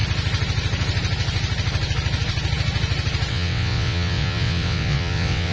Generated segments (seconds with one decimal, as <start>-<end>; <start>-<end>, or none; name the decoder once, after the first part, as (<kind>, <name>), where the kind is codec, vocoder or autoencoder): 3.3-5.5 (vocoder, WaveNeXt)